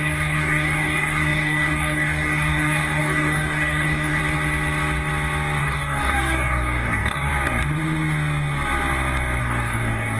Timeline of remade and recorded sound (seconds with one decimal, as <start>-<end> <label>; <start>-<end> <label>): 0.0-4.2 remade; 4.2-5.6 recorded; 5.6-7.3 remade; 7.3-9.4 recorded; 9.4-10.2 remade